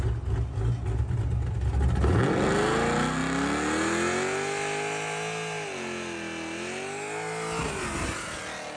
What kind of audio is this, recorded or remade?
recorded